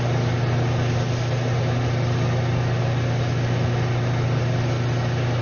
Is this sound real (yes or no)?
yes